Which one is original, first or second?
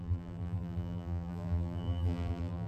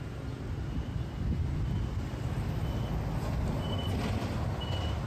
second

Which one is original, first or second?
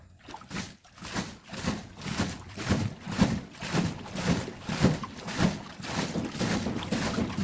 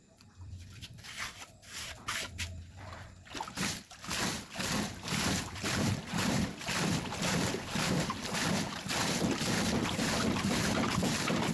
first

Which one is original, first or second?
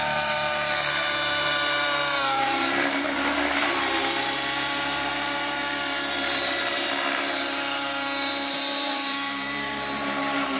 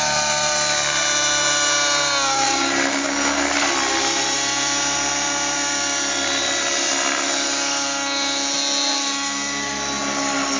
second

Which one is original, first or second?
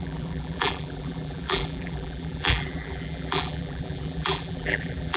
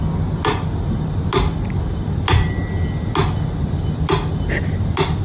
second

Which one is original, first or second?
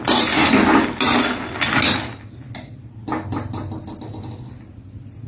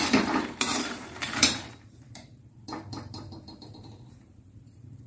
first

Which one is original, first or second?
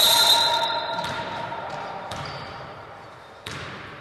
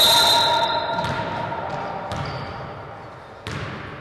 second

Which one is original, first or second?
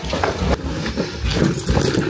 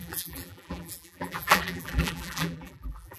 first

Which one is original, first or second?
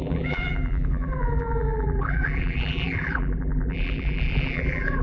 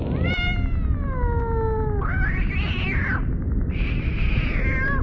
second